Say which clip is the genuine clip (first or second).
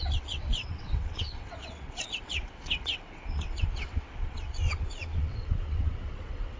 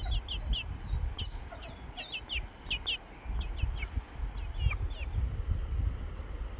second